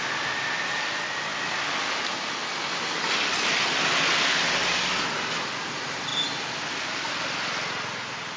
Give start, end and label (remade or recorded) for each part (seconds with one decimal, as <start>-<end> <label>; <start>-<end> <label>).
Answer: 0.0-8.4 recorded